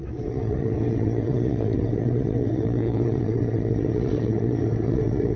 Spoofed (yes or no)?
yes